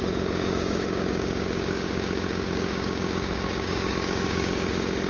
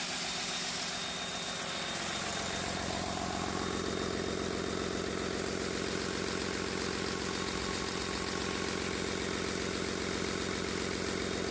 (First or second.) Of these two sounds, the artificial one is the first